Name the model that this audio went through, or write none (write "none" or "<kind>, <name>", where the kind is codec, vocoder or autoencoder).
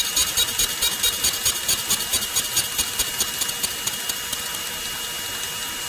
none